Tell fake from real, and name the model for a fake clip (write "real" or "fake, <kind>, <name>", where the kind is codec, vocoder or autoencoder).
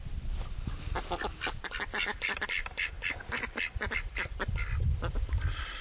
fake, vocoder, BigVGAN v2